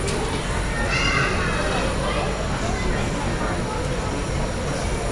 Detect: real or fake real